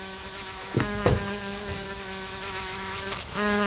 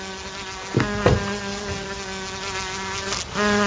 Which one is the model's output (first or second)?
first